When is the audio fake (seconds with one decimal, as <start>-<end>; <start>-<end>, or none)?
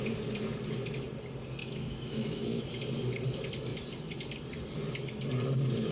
1.6-2.6